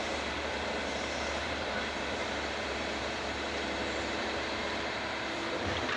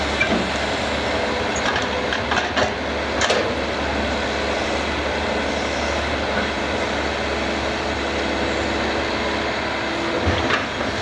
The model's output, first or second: first